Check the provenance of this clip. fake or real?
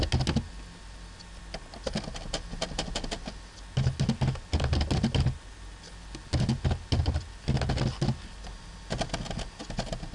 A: real